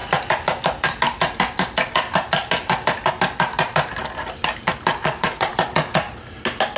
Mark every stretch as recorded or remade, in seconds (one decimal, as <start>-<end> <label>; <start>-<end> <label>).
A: 0.0-4.9 recorded; 4.9-5.5 remade; 5.5-6.8 recorded

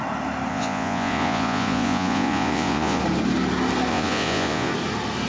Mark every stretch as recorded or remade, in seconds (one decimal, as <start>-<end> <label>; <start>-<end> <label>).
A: 0.0-0.5 recorded; 0.5-3.0 remade; 3.0-3.9 recorded; 3.9-4.7 remade; 4.7-5.3 recorded

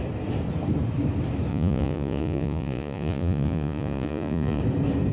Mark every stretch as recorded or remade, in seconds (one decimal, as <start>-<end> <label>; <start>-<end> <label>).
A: 0.0-1.5 recorded; 1.5-4.6 remade; 4.6-5.1 recorded

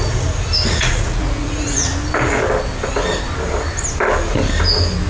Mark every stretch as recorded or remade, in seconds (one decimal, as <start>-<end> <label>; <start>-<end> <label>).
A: 0.0-0.7 recorded; 0.7-1.9 remade; 1.9-5.1 recorded

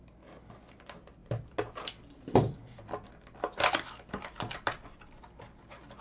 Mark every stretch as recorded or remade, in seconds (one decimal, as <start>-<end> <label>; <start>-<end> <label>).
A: 0.0-6.0 recorded

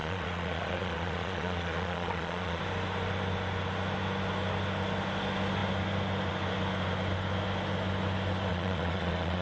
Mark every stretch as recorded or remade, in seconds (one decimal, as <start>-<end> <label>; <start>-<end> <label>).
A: 0.0-2.6 remade; 2.6-8.5 recorded; 8.5-9.4 remade

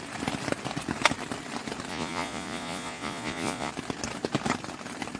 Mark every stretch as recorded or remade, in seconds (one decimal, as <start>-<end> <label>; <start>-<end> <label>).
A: 0.0-1.9 recorded; 1.9-3.7 remade; 3.7-5.2 recorded

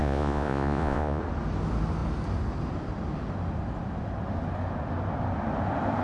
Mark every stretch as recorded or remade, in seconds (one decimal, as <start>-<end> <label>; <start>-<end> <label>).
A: 0.0-1.2 remade; 1.2-6.0 recorded